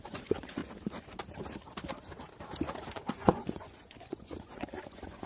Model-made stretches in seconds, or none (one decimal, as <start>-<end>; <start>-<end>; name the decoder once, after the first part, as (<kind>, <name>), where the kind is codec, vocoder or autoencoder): 0.0-0.6 (vocoder, Vocos); 2.9-5.3